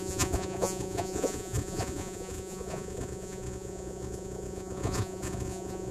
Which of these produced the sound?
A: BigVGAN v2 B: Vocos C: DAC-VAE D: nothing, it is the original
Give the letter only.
B